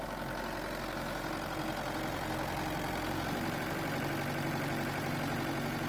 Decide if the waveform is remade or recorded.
recorded